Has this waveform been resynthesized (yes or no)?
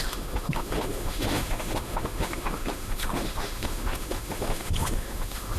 yes